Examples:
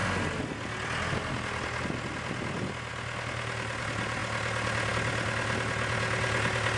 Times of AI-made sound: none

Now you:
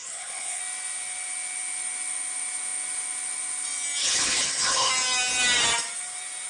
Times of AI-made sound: 0.0-0.6 (codec, HILCodec); 4.0-4.9

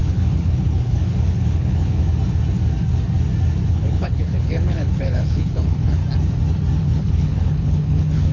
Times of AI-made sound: 0.0-2.0 (codec, HILCodec); 3.7-6.0; 6.8-8.3

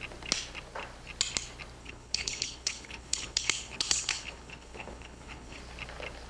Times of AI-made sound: 1.8-5.6 (codec, HILCodec)

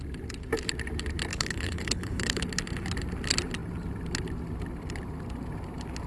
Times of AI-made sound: 1.3-2.4 (codec, HILCodec)

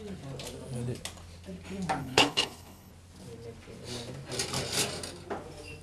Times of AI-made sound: 2.0-2.9 (codec, HILCodec)

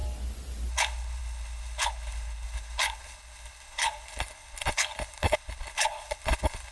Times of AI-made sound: 0.7-6.7 (codec, HILCodec)

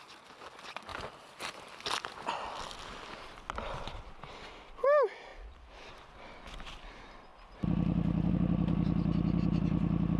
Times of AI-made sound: none